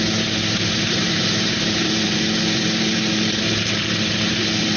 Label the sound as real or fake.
fake